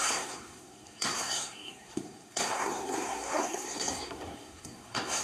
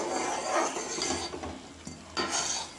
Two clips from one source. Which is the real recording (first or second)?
second